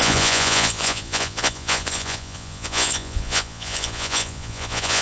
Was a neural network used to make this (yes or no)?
yes